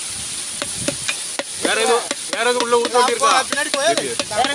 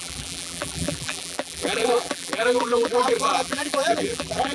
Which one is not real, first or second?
second